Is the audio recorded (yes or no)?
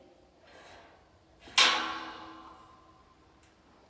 yes